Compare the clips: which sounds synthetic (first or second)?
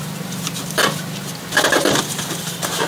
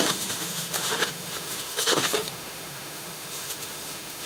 second